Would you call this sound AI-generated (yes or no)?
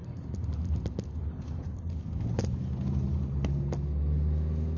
no